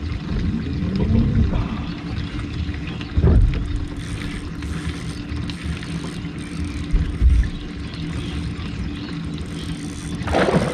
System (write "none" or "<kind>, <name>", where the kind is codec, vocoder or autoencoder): none